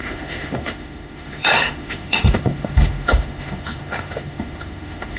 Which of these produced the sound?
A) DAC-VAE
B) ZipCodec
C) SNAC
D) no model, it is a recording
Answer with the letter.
A